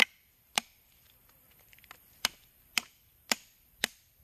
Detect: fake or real real